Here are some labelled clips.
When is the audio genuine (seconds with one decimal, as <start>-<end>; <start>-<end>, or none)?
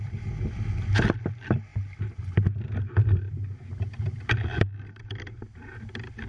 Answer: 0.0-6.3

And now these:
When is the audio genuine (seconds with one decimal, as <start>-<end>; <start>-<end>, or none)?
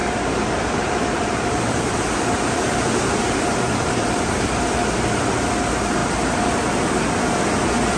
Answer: 4.6-6.0; 6.5-8.0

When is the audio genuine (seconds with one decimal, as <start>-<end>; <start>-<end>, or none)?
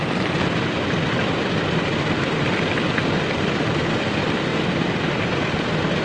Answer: 0.0-6.0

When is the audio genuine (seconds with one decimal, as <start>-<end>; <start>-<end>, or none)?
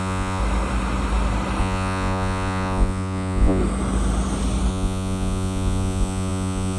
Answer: 0.4-1.6; 3.6-4.7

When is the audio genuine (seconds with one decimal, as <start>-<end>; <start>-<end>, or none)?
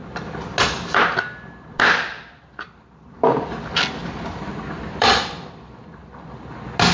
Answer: 0.0-4.0; 5.8-6.9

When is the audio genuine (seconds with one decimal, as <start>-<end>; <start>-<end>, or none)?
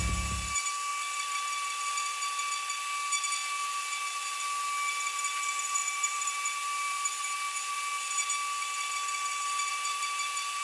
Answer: 0.0-0.9; 2.4-5.8; 7.2-9.7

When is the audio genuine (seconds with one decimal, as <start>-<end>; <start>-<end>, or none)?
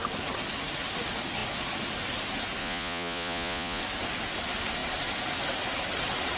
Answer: 0.0-2.6; 3.8-6.4